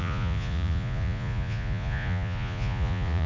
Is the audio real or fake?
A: fake